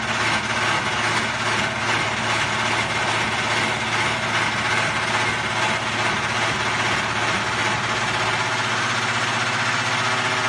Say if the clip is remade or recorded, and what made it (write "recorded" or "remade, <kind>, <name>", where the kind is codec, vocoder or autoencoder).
recorded